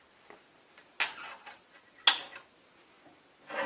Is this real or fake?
real